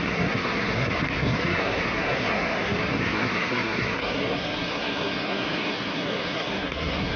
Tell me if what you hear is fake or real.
fake